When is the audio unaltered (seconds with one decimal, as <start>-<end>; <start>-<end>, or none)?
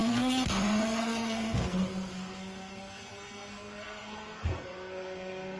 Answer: none